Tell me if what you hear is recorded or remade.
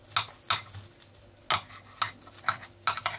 recorded